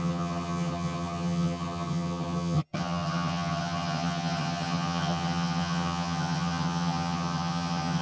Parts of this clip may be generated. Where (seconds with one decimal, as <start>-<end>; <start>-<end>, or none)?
0.0-8.0